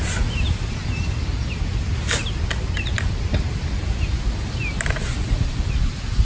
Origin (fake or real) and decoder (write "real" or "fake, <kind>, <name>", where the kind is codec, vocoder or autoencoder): real